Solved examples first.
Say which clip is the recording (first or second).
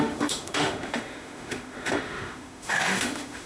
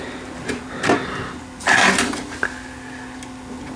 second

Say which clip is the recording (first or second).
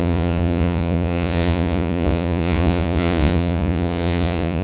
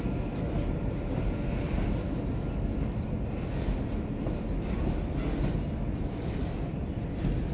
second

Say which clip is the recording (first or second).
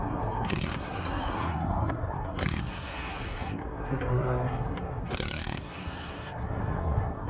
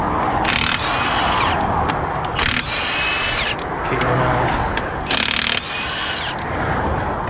second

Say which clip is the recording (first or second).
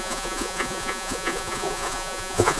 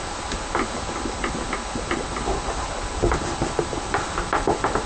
second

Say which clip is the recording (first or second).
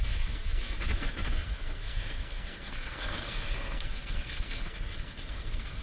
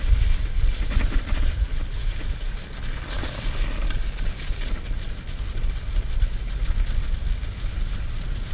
second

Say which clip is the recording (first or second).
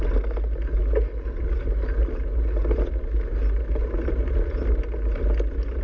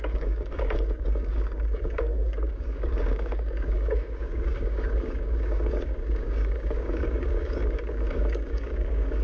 first